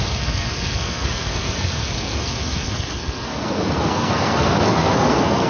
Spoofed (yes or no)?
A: yes